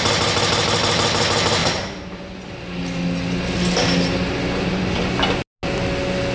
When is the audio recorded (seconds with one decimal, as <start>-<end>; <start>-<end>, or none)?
0.0-6.3